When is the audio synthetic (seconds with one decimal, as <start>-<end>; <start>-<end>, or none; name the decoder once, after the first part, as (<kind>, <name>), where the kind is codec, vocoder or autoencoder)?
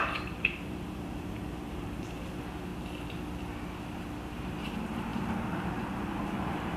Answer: 0.0-2.7 (vocoder, BigVGAN v2); 4.6-6.8